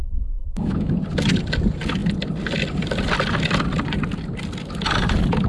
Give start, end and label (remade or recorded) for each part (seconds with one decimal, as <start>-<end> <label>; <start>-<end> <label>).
0.0-0.9 remade; 0.9-5.5 recorded